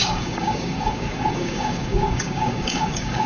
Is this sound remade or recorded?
remade